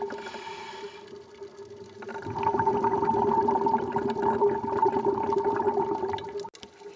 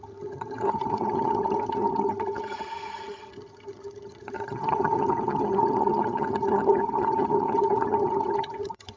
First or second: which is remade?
second